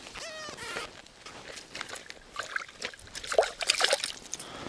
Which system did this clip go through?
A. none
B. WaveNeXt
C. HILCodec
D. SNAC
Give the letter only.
A